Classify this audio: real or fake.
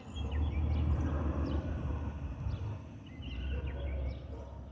real